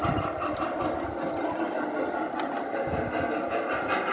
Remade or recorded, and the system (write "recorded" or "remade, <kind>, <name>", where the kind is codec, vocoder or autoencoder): recorded